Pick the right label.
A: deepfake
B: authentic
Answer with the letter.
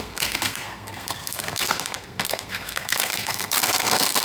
A